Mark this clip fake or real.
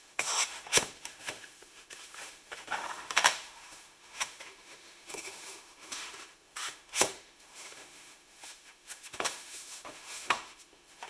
fake